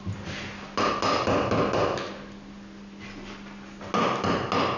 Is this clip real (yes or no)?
yes